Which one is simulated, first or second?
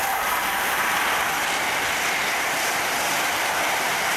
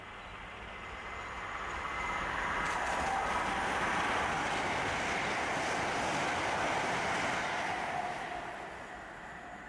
first